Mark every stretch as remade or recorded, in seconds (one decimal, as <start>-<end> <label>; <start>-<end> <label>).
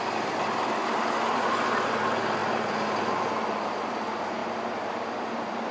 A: 0.0-5.7 recorded